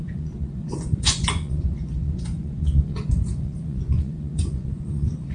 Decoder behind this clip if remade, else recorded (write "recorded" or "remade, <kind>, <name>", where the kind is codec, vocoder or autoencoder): remade, vocoder, Vocos